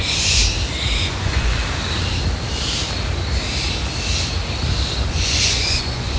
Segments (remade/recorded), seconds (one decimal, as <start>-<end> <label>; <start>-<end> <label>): 0.0-0.4 remade; 0.4-1.0 recorded; 1.0-1.6 remade; 1.6-5.1 recorded; 5.1-6.2 remade